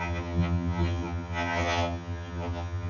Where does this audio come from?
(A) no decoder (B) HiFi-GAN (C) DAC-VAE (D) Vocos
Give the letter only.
B